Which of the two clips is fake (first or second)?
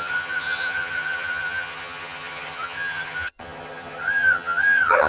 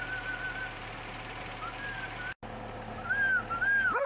first